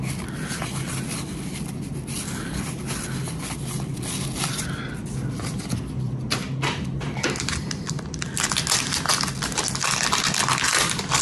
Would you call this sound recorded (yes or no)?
yes